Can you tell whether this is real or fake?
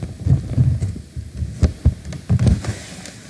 real